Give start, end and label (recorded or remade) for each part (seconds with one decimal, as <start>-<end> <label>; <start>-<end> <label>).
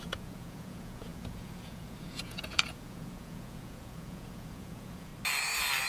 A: 0.0-5.1 remade; 5.1-5.9 recorded